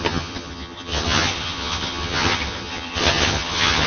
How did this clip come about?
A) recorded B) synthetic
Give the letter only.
B